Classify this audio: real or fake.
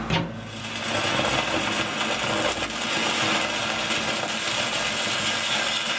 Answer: real